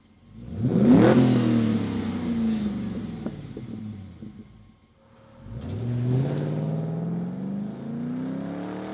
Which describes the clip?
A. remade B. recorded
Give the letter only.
B